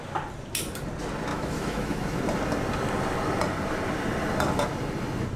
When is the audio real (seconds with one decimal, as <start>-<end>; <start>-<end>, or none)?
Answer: 0.0-1.3; 2.2-5.4